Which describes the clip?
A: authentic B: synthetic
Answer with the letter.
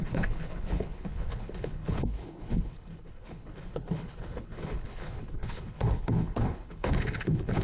B